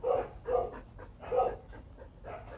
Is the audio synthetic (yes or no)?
no